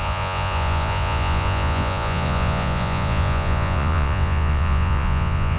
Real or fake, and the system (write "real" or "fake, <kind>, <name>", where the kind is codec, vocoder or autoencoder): fake, vocoder, Vocos